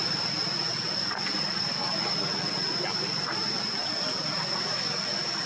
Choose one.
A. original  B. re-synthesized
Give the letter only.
A